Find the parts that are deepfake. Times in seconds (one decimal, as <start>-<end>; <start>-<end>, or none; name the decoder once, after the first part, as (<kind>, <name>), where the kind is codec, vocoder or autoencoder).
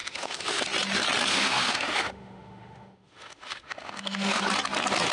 0.0-0.6 (autoencoder, DAC-VAE); 1.3-4.4